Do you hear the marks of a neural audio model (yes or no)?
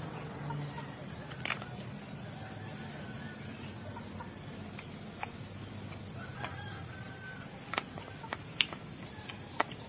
no